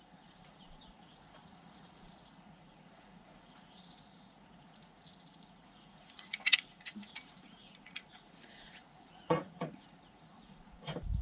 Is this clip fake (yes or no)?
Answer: yes